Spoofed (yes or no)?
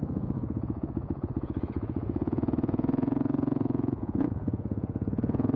yes